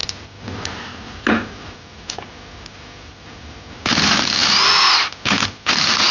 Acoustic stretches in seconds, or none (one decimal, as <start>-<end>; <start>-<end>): 0.0-6.1